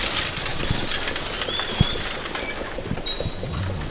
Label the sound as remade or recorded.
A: recorded